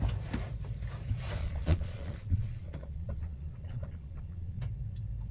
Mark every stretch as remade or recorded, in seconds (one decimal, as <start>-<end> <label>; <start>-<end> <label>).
0.0-1.4 recorded; 1.4-4.6 remade; 4.6-5.3 recorded

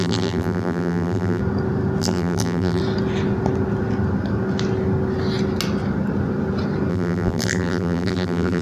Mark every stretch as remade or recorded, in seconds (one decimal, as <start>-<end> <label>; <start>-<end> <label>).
0.0-1.4 remade; 1.4-2.0 recorded; 2.0-2.8 remade; 2.8-6.9 recorded; 6.9-8.6 remade

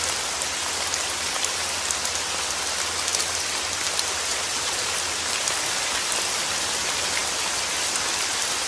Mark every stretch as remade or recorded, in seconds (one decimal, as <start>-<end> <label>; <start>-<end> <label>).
0.0-4.3 recorded; 4.3-4.9 remade; 4.9-8.7 recorded

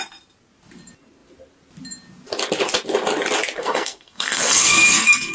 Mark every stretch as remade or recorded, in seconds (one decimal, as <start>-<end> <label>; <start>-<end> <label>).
0.0-3.6 recorded; 3.6-5.3 remade

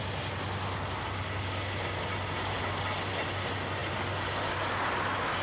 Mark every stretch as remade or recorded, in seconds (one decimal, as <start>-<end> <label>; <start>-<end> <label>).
0.0-5.4 recorded